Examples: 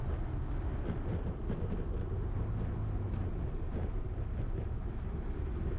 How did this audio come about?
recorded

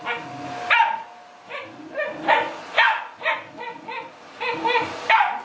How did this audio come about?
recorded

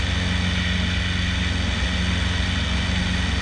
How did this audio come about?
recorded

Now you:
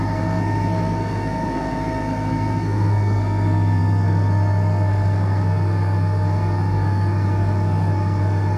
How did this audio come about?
remade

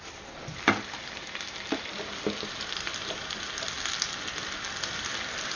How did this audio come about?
recorded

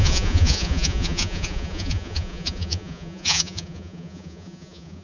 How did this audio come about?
remade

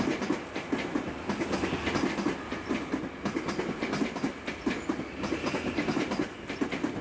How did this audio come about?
recorded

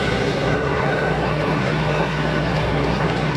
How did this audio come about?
remade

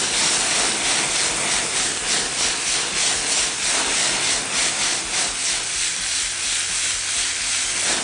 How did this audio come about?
recorded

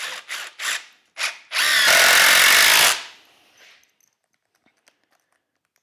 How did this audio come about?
recorded